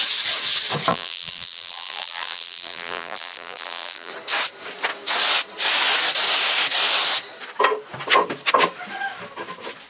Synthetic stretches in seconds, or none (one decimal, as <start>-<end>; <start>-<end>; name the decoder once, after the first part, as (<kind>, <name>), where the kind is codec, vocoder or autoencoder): 0.9-4.1 (vocoder, BigVGAN v2)